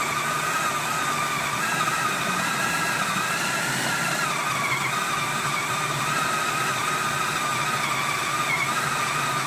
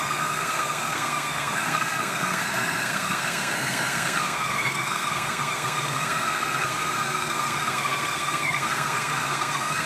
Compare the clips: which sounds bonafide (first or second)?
first